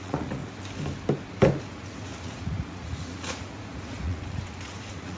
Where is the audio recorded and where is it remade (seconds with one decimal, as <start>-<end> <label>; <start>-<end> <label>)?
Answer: 0.0-0.4 remade; 0.4-1.6 recorded; 1.6-5.2 remade